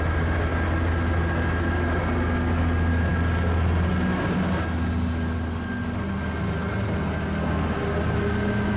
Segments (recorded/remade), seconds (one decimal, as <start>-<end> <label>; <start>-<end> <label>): 0.0-8.8 recorded